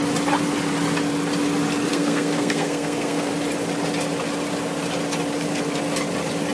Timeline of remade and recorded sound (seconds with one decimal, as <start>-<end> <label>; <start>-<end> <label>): 0.0-1.9 recorded; 1.9-3.3 remade; 3.3-6.5 recorded